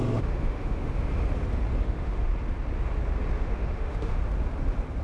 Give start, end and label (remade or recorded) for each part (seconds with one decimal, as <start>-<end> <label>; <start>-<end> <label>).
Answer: 0.0-1.1 remade; 1.1-1.8 recorded; 1.8-2.3 remade; 2.3-3.4 recorded; 3.4-4.2 remade; 4.2-5.0 recorded